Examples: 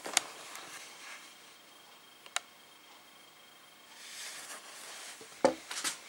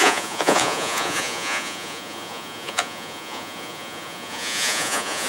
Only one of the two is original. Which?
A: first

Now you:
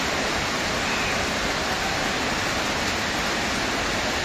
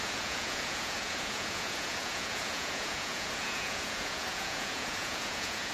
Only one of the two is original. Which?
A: first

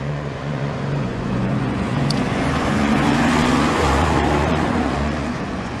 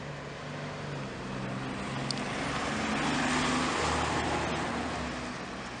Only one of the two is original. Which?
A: second